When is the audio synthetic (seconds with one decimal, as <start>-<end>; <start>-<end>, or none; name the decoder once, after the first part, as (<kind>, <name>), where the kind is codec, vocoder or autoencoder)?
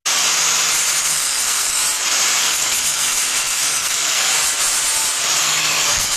1.0-1.8 (codec, SNAC); 2.4-4.3; 5.4-6.2